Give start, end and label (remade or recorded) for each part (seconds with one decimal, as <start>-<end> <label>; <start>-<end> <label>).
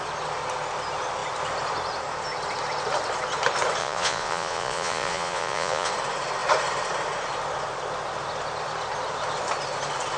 0.0-3.8 recorded; 3.8-5.9 remade; 5.9-10.2 recorded